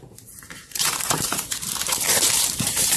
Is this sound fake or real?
fake